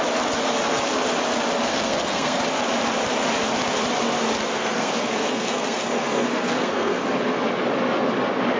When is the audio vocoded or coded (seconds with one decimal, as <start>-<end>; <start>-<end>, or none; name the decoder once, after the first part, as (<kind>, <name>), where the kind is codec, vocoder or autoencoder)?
1.7-2.4 (codec, SNAC); 4.5-7.0